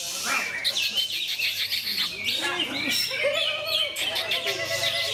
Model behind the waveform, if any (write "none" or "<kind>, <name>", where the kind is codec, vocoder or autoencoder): none